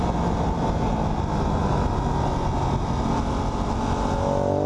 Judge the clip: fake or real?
real